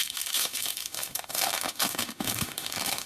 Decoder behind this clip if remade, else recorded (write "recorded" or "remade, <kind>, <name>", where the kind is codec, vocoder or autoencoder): remade, autoencoder, DAC-VAE